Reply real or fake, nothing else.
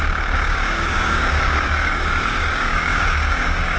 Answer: fake